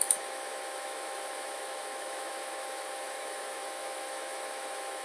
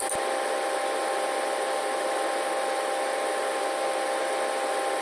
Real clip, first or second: second